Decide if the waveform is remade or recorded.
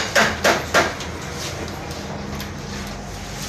recorded